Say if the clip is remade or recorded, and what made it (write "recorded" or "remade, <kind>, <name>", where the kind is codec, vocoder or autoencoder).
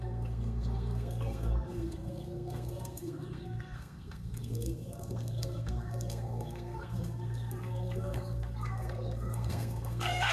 remade, codec, SNAC